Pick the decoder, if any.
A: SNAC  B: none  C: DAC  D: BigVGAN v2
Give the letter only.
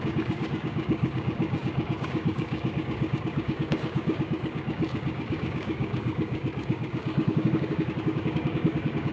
C